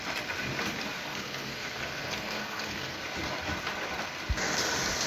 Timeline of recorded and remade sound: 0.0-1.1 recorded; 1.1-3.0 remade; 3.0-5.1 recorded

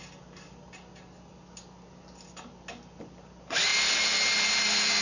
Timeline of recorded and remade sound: 0.0-5.0 recorded

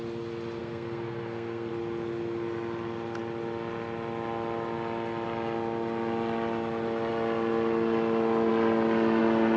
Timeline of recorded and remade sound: 0.0-0.6 recorded; 0.6-1.7 remade; 1.7-9.6 recorded

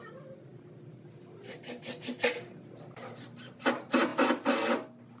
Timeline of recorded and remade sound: 0.0-5.2 recorded

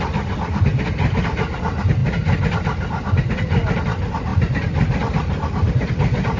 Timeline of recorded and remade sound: 0.0-6.4 recorded

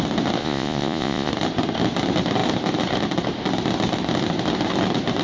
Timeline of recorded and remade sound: 0.0-0.4 recorded; 0.4-1.3 remade; 1.3-5.2 recorded

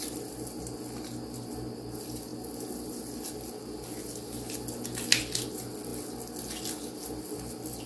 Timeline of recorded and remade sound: 0.0-7.9 recorded